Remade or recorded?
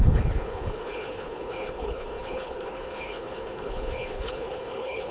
remade